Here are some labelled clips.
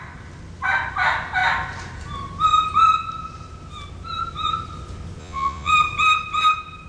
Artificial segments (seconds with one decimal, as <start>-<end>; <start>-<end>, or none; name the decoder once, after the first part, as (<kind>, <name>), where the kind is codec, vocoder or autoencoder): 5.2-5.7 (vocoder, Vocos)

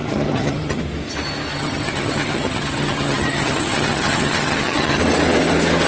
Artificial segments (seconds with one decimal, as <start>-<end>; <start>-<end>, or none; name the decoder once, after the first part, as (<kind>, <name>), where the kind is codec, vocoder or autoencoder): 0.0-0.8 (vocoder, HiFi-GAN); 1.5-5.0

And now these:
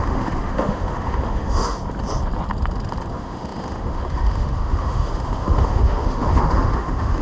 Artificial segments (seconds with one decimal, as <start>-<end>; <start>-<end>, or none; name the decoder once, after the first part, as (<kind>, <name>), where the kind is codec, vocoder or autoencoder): 0.0-1.8 (autoencoder, DAC-VAE); 3.1-7.2